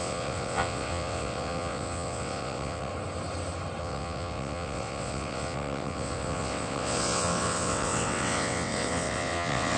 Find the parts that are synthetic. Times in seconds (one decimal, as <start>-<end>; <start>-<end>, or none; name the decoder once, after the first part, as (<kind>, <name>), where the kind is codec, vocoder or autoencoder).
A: 0.0-2.9 (vocoder, WaveNeXt); 3.8-9.8